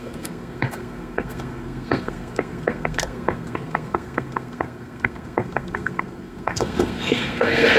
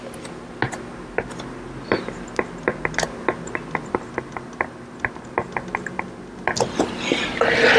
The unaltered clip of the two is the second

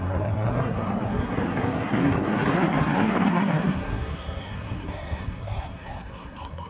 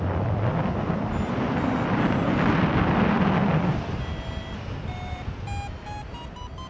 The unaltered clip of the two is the second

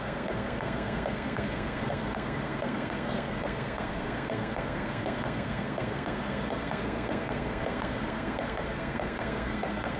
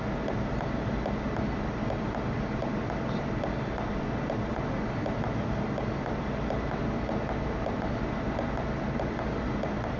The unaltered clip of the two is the second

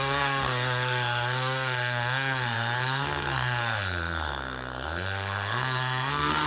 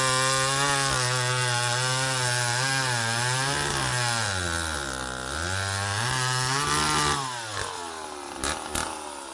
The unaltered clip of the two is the second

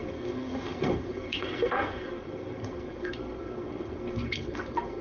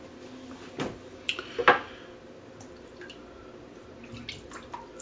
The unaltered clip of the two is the second